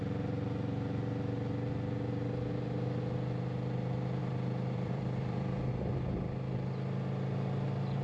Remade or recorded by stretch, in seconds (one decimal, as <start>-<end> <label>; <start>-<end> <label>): 0.0-4.2 recorded; 4.2-5.7 remade; 5.7-8.0 recorded